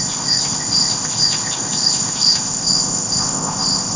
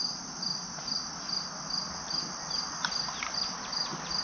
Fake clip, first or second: first